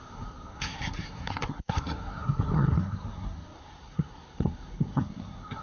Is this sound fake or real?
fake